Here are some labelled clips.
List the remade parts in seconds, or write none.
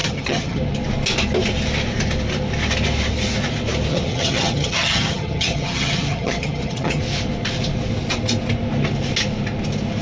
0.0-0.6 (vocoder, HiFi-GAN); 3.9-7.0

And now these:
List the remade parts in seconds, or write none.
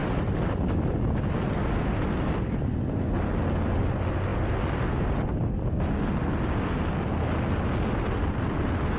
none